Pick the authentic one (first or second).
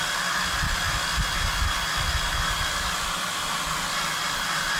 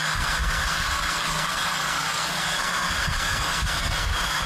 first